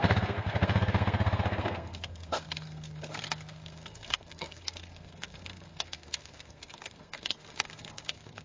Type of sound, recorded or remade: remade